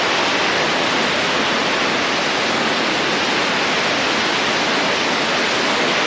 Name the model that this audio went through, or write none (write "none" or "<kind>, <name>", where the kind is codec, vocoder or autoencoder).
none